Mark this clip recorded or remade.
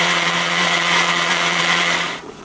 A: remade